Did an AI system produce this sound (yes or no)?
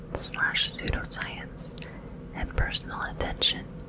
no